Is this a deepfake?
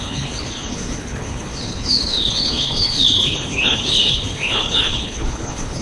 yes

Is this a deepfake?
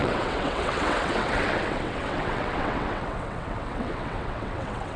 yes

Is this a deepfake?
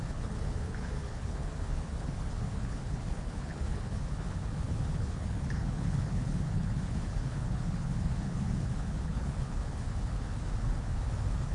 yes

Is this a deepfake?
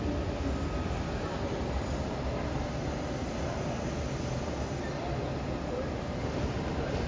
no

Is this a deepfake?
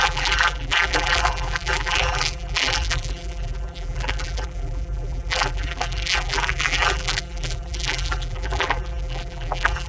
yes